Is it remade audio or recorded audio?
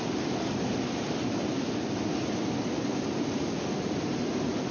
recorded